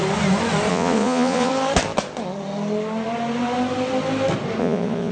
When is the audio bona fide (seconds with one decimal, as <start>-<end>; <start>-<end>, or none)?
0.0-0.7; 1.5-4.6